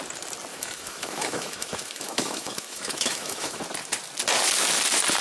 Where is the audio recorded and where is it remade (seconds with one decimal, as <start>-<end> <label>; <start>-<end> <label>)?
0.0-0.5 recorded; 0.5-3.6 remade; 3.6-5.2 recorded